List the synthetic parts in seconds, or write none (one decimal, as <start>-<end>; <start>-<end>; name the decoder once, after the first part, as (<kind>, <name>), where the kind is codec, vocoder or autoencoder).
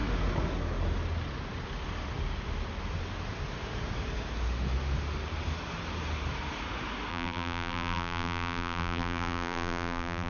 7.1-10.3 (vocoder, BigVGAN v2)